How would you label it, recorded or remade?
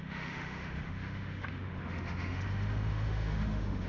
remade